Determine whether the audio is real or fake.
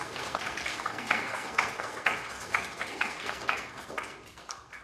fake